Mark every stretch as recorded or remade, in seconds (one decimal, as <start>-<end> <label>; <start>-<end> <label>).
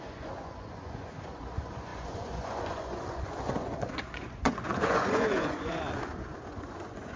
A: 0.0-7.2 remade